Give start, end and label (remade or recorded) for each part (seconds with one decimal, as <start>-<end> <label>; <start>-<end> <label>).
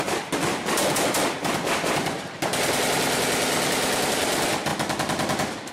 0.0-5.7 recorded